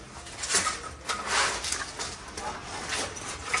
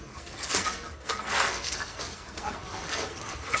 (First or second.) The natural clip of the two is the first